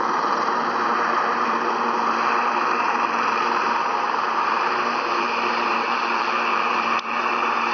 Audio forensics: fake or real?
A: fake